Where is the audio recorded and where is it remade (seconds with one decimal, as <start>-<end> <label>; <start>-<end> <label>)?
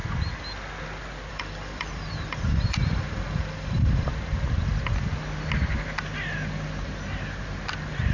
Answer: 0.0-1.3 recorded; 1.3-4.1 remade; 4.1-8.1 recorded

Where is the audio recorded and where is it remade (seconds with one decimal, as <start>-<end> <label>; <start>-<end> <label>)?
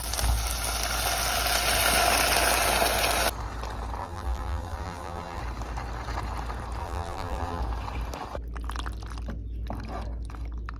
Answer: 0.0-4.0 recorded; 4.0-5.4 remade; 5.4-6.8 recorded; 6.8-7.6 remade; 7.6-10.8 recorded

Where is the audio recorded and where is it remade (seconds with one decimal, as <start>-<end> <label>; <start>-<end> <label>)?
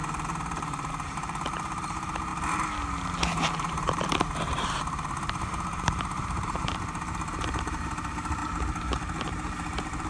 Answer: 0.0-2.3 remade; 2.3-3.5 recorded; 3.5-10.1 remade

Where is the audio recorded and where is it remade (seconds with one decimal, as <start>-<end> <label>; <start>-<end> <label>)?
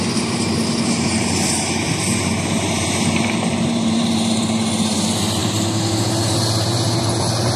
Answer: 0.0-7.6 remade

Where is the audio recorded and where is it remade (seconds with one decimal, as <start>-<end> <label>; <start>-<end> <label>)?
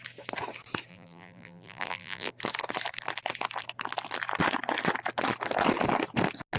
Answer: 0.0-0.9 recorded; 0.9-2.3 remade; 2.3-6.6 recorded